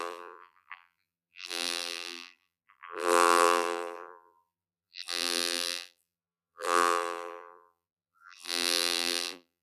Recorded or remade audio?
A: remade